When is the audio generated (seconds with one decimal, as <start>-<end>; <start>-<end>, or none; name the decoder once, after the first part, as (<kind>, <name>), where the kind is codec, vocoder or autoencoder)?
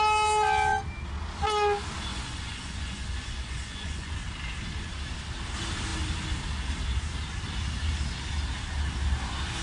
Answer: 2.1-4.2 (vocoder, Vocos)